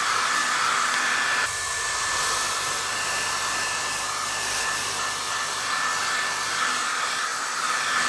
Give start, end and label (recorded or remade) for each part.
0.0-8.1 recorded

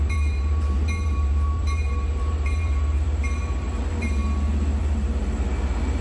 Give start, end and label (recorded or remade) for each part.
0.0-4.2 remade; 4.2-4.8 recorded; 4.8-6.0 remade

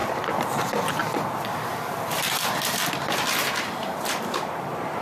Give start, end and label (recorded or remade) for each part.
0.0-5.0 remade

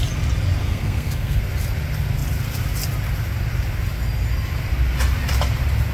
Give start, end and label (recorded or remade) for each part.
0.0-0.6 recorded; 0.6-1.4 remade; 1.4-5.9 recorded

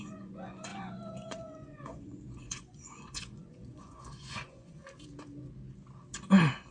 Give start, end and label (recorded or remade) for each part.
0.0-4.8 remade; 4.8-6.7 recorded

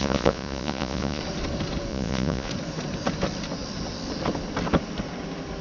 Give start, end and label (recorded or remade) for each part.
0.0-1.2 remade; 1.2-1.9 recorded; 1.9-2.5 remade; 2.5-5.6 recorded

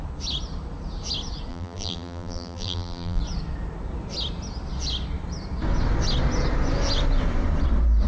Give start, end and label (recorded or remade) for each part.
0.0-1.5 recorded; 1.5-3.2 remade; 3.2-8.1 recorded

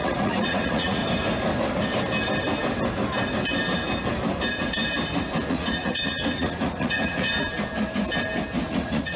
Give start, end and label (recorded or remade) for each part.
0.0-1.0 remade; 1.0-5.5 recorded; 5.5-7.3 remade; 7.3-8.7 recorded; 8.7-9.2 remade